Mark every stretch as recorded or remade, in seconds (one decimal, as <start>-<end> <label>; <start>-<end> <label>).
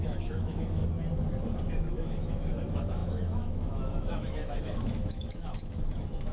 0.0-0.8 remade; 0.8-1.7 recorded; 1.7-6.3 remade